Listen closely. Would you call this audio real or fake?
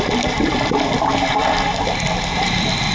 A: real